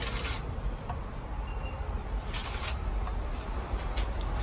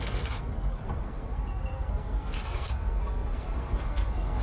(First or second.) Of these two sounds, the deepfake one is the second